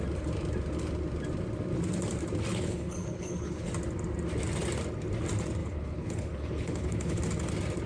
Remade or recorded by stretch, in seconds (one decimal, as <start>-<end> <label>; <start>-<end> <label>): 0.0-2.5 recorded; 2.5-3.7 remade; 3.7-5.6 recorded; 5.6-7.2 remade; 7.2-7.9 recorded